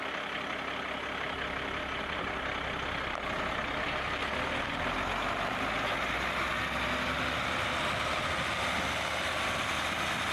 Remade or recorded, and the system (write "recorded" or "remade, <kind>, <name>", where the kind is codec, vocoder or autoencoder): recorded